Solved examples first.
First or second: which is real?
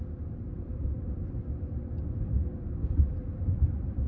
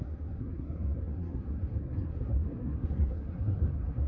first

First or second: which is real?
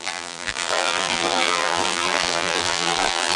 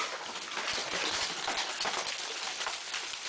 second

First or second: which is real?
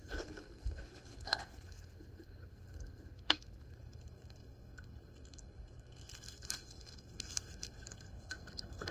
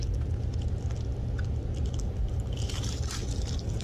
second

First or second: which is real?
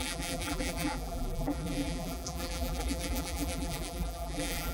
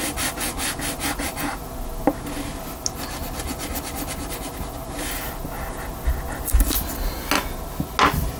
second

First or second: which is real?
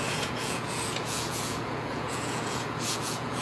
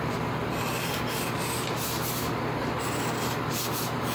second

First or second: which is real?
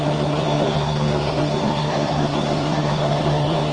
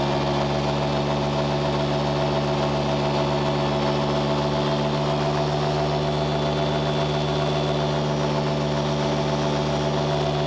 second